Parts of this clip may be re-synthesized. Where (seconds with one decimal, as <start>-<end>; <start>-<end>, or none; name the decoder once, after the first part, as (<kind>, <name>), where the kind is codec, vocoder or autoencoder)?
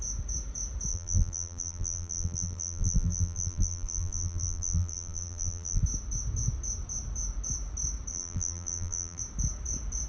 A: 0.9-5.8 (vocoder, BigVGAN v2); 8.1-9.2